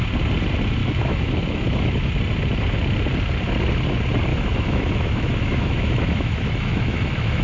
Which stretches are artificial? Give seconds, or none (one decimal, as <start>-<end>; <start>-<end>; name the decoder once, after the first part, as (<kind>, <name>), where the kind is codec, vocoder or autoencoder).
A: 0.8-2.1 (autoencoder, DAC-VAE); 4.3-7.4